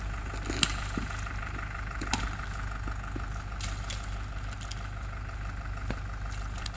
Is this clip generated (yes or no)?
no